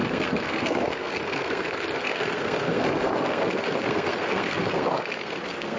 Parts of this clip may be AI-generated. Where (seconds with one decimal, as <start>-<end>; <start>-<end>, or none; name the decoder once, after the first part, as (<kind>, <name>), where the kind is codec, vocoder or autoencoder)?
0.0-5.8 (codec, SNAC)